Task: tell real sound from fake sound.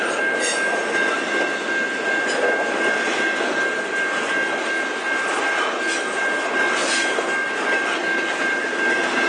real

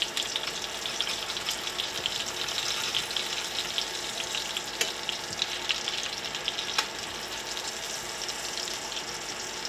real